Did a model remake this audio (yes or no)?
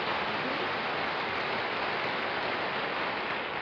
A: no